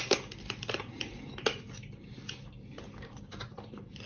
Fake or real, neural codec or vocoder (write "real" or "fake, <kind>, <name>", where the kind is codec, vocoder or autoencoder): real